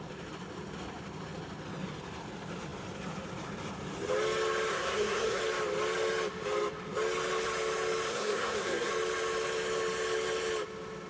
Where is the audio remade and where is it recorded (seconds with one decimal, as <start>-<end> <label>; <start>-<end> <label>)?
0.0-4.7 recorded; 4.7-5.4 remade; 5.4-8.1 recorded; 8.1-8.9 remade; 8.9-11.1 recorded